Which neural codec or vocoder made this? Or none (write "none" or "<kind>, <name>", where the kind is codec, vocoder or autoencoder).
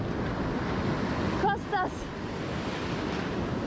none